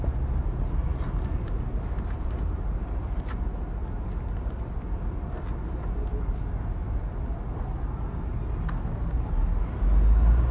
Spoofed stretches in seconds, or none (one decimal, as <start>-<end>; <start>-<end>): 0.9-3.4